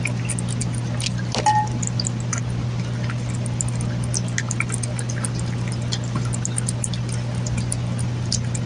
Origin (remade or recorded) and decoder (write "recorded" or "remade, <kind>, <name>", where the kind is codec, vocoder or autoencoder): recorded